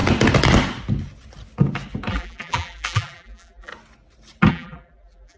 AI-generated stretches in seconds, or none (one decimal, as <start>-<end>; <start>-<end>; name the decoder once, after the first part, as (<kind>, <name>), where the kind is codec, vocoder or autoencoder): 2.1-3.7 (vocoder, BigVGAN v2); 4.5-5.4